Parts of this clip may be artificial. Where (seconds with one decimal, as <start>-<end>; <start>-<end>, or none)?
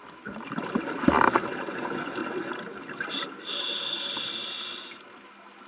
1.6-2.2